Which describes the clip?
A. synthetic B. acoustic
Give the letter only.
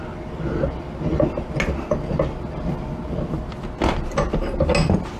B